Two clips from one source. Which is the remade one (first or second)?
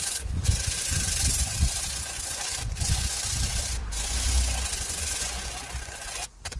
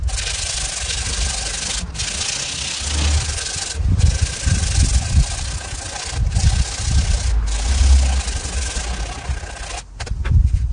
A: first